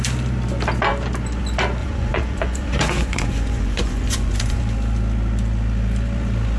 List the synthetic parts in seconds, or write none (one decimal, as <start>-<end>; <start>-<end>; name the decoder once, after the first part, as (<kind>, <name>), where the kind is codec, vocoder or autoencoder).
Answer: 1.8-4.6 (vocoder, Vocos)